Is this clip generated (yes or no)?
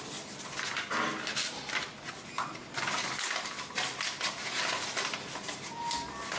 no